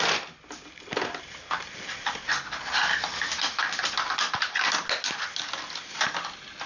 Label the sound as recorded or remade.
recorded